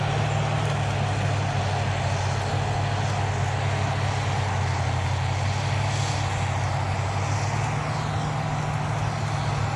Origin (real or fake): real